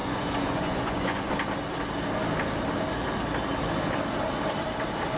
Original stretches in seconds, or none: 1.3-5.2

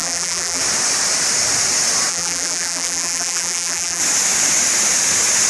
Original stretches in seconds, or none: 0.6-2.1; 4.0-5.5

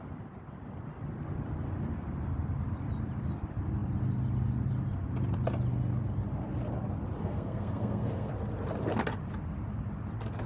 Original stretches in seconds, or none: 0.0-7.2; 8.3-10.5

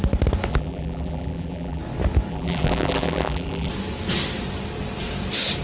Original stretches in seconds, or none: 0.0-0.5; 1.8-2.3; 3.7-5.6

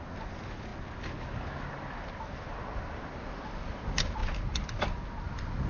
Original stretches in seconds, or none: 0.0-5.7

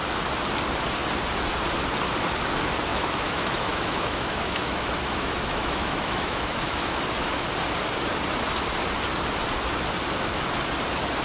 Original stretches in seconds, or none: 0.0-2.9; 7.0-11.2

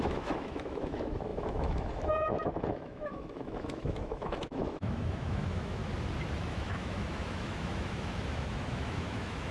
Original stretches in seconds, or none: 5.8-6.4

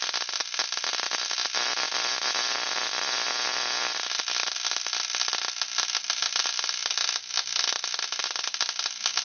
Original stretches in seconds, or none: 0.0-9.2